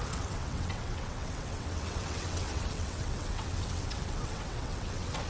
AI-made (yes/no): yes